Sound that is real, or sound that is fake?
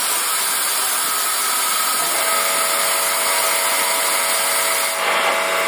real